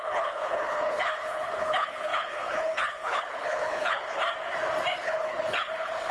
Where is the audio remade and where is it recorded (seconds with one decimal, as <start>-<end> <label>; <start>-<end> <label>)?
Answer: 0.0-4.2 remade; 4.2-5.0 recorded; 5.0-6.1 remade